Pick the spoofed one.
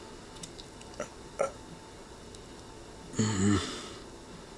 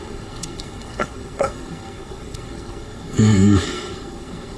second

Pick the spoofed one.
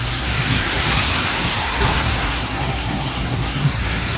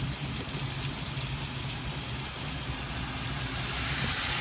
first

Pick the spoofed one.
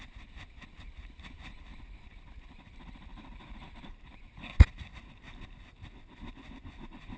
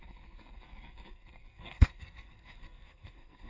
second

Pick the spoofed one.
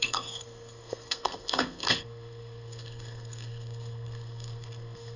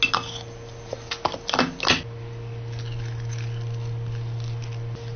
first